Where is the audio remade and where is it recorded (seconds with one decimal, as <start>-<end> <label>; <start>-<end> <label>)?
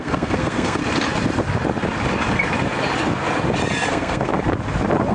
0.0-0.8 remade; 0.8-3.9 recorded; 3.9-4.3 remade; 4.3-5.1 recorded